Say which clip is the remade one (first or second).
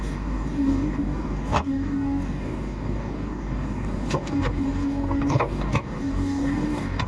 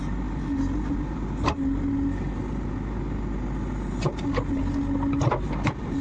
first